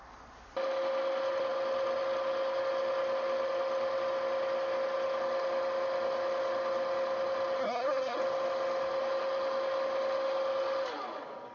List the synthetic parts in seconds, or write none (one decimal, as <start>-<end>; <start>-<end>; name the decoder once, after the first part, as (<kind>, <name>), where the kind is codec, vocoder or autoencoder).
7.6-8.2 (codec, SNAC)